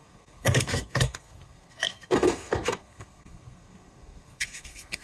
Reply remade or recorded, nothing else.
remade